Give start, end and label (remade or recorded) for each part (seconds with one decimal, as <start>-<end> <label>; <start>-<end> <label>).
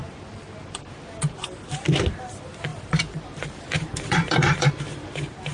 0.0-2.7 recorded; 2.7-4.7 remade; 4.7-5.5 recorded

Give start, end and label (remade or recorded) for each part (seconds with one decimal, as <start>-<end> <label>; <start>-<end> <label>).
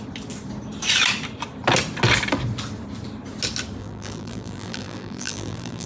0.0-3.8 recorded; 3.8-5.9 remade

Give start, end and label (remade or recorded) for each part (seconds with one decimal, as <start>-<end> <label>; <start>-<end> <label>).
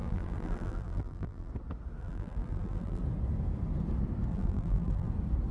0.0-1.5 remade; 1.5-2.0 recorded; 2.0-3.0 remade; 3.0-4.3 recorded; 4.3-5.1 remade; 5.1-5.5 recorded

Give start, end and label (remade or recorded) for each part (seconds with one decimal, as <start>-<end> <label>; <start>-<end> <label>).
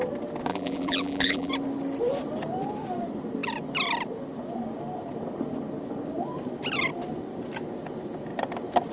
0.0-0.5 recorded; 0.5-1.5 remade; 1.5-8.9 recorded